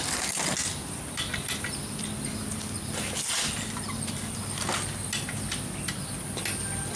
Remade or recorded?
recorded